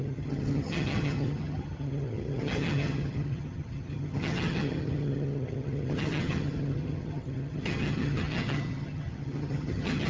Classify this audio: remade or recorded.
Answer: remade